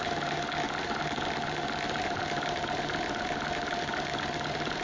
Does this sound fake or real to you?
real